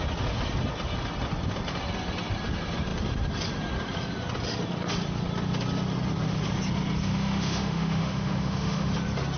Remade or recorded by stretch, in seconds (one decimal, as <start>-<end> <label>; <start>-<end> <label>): 0.0-7.0 recorded; 7.0-8.9 remade; 8.9-9.4 recorded